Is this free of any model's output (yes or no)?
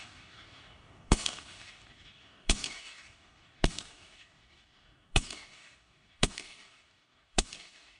no